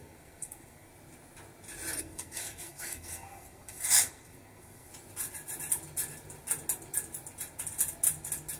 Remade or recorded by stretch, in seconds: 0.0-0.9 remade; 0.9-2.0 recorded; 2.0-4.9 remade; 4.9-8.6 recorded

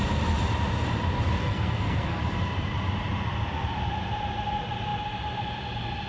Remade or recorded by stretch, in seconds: 0.0-1.4 recorded; 1.4-2.2 remade; 2.2-6.1 recorded

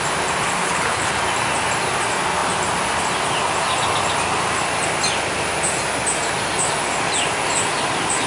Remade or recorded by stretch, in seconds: 0.0-0.6 recorded; 0.6-1.2 remade; 1.2-8.3 recorded

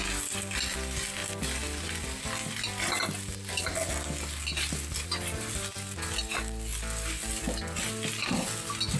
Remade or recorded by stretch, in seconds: 0.0-9.0 recorded